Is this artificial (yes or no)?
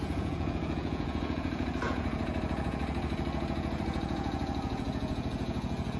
yes